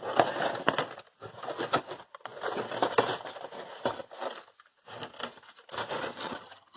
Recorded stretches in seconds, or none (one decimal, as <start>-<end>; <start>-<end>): 0.0-6.1